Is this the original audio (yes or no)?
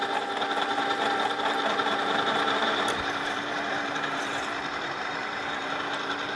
no